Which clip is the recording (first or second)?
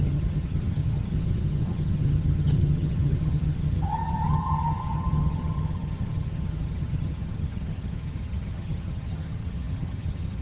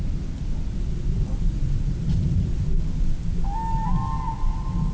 second